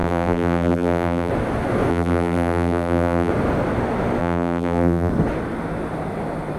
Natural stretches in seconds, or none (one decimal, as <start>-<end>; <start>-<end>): 1.3-1.9; 3.3-4.2; 5.1-6.6